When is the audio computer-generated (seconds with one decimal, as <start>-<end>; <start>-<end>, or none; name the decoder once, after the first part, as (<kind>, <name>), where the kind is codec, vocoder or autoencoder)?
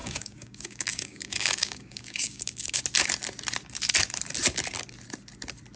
0.0-2.8 (codec, DAC)